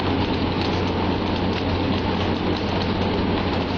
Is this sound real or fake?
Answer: real